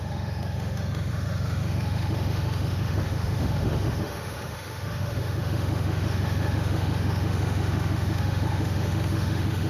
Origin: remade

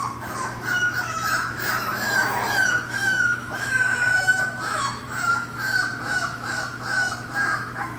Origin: remade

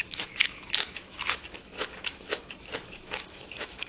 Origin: remade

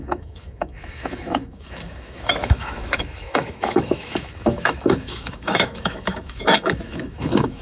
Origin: remade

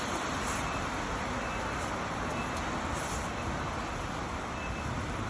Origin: recorded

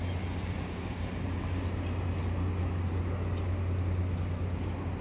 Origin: recorded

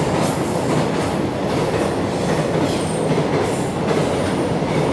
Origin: recorded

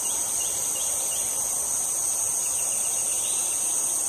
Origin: recorded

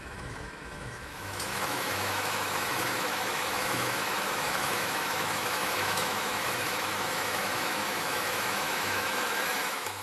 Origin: remade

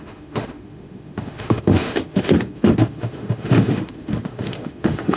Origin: remade